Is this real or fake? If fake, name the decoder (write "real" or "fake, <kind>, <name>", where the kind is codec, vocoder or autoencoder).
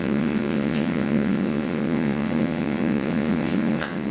fake, vocoder, WaveNeXt